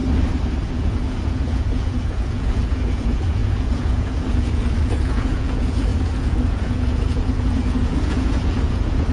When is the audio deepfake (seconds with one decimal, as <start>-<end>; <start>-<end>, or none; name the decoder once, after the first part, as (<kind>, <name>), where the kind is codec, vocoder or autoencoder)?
0.7-9.1 (vocoder, Vocos)